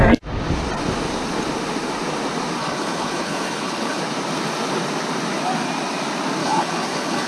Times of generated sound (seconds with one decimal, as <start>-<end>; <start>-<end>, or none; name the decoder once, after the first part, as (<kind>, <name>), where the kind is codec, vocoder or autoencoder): 2.6-4.0 (codec, HILCodec); 6.4-7.3